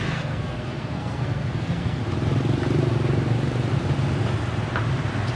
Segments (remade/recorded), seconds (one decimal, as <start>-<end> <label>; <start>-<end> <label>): 0.0-2.0 remade; 2.0-5.4 recorded